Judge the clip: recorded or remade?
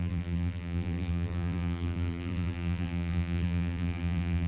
remade